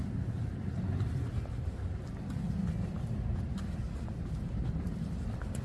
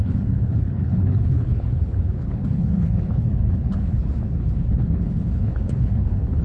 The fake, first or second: second